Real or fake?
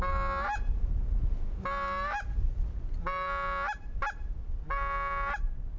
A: real